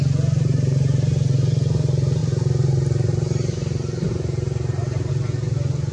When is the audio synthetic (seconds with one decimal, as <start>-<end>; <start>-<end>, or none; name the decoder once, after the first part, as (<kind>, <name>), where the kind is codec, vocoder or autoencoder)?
2.2-5.1 (vocoder, BigVGAN v2)